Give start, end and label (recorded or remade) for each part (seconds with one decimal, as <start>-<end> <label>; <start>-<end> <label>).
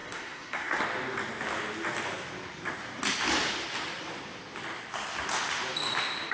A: 0.0-0.8 remade; 0.8-6.3 recorded